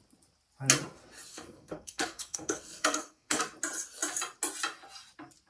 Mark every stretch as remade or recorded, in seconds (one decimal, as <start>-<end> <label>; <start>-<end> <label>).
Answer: 0.0-1.3 recorded; 1.3-3.4 remade; 3.4-5.5 recorded